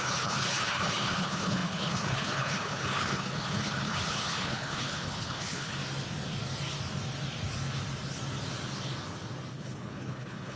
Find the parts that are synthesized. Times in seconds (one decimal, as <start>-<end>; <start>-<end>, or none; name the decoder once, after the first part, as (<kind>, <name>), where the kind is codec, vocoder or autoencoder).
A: 0.0-5.8 (codec, HILCodec); 9.5-10.6